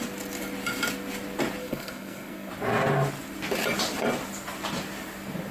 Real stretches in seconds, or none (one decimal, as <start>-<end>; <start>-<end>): 0.0-1.6; 2.5-5.5